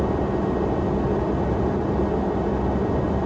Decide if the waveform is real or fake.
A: real